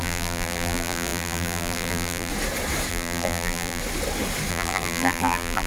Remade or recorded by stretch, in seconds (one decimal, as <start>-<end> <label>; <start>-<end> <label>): 0.0-2.3 remade; 2.3-2.9 recorded; 2.9-3.8 remade; 3.8-4.5 recorded; 4.5-5.7 remade